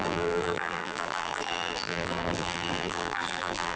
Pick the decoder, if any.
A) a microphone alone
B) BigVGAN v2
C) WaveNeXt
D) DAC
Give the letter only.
B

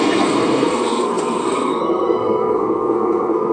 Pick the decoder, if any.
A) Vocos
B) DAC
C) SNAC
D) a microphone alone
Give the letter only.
C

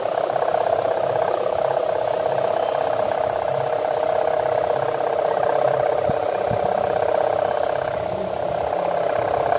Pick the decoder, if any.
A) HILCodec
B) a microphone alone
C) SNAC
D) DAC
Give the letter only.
B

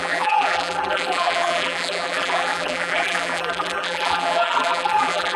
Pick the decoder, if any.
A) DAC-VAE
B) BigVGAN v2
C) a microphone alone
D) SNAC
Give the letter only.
B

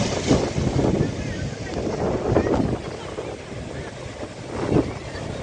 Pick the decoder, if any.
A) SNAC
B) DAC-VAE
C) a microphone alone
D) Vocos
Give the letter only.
C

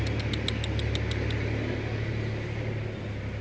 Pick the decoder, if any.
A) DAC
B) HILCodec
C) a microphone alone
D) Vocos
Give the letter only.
C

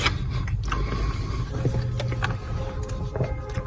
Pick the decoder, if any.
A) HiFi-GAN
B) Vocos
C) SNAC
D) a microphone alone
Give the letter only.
D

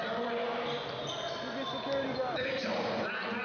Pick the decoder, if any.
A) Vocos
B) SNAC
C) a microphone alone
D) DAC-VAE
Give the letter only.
C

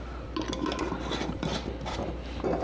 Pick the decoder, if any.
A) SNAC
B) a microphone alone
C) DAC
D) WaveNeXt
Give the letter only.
B